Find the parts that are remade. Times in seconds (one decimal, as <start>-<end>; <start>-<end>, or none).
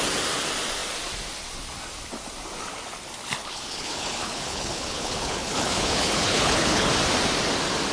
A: 3.4-6.9